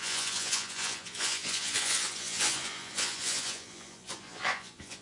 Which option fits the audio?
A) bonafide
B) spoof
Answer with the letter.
B